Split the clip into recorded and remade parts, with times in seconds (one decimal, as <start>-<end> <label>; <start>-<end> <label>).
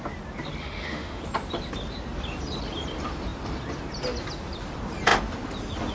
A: 0.0-0.6 recorded; 0.6-1.2 remade; 1.2-5.9 recorded